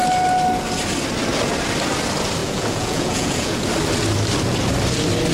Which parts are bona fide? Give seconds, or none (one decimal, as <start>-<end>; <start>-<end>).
0.0-2.4; 3.7-5.3